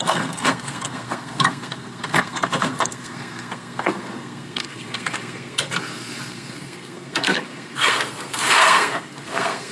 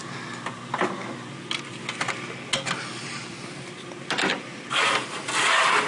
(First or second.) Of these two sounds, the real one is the second